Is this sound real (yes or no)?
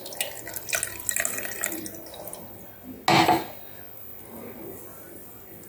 yes